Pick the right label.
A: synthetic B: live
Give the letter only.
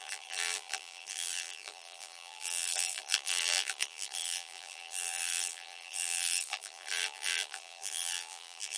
A